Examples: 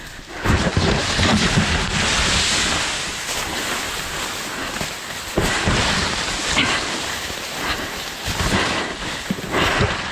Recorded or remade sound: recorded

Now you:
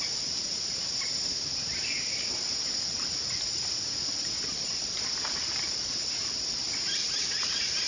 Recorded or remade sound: recorded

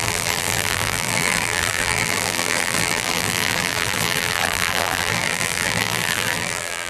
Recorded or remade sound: remade